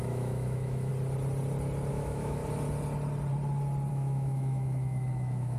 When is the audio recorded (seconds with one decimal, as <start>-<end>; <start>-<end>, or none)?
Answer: 0.9-1.9; 2.4-3.9